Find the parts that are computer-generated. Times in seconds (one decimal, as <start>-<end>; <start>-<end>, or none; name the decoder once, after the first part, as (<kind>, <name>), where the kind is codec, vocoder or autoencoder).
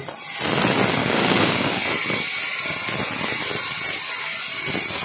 1.0-1.8 (codec, DAC)